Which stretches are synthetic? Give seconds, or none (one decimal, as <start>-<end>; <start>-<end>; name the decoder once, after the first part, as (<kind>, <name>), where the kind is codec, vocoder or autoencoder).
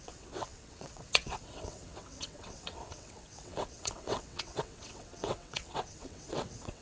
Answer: 0.0-6.8 (vocoder, WaveNeXt)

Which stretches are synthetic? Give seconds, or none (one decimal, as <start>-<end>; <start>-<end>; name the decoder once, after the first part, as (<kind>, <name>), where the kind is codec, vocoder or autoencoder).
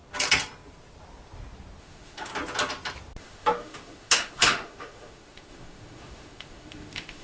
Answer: 1.8-2.3 (autoencoder, DAC-VAE); 3.2-7.2